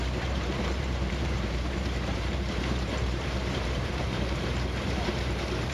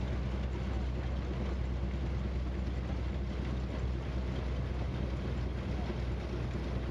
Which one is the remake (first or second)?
first